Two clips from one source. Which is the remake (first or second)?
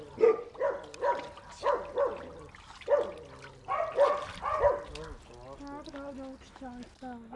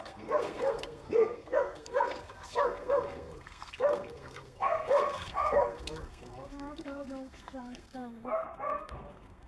second